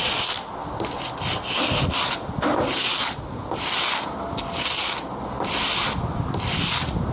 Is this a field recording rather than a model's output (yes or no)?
yes